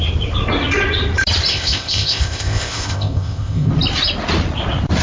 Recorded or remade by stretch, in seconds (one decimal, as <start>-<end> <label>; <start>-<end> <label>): 0.0-1.5 recorded; 1.5-3.7 remade; 3.7-5.0 recorded

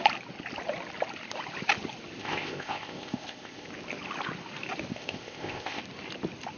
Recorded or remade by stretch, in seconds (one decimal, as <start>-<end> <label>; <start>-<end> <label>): 0.0-2.2 recorded; 2.2-3.7 remade; 3.7-4.9 recorded; 4.9-5.8 remade; 5.8-6.6 recorded

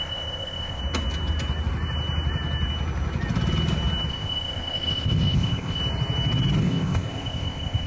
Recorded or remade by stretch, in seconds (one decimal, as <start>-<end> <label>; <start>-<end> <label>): 0.0-0.8 remade; 0.8-4.1 recorded; 4.1-5.8 remade; 5.8-6.6 recorded; 6.6-7.9 remade

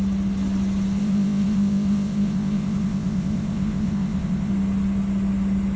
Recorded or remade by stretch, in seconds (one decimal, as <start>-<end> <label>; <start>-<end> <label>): 0.0-1.0 recorded; 1.0-4.5 remade; 4.5-5.8 recorded

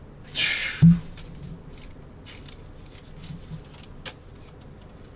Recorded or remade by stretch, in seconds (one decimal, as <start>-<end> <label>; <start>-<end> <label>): 0.0-5.2 recorded

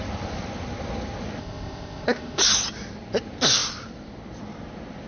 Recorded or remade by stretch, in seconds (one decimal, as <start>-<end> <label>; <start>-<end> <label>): 0.0-1.4 recorded; 1.4-2.4 remade; 2.4-5.1 recorded

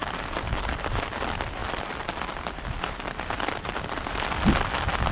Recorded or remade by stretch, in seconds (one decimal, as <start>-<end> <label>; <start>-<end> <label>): 0.0-5.1 recorded